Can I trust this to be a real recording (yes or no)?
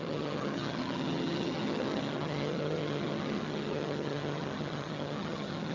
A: no